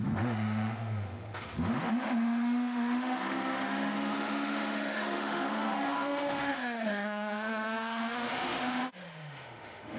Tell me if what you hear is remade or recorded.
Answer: remade